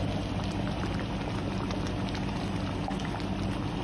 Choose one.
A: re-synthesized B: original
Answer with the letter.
B